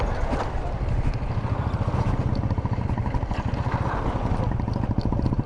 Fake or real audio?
real